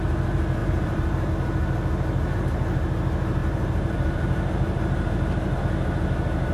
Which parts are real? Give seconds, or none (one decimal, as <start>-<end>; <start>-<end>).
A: 0.0-0.6; 1.3-3.4; 5.6-6.5